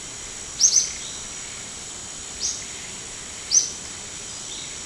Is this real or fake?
real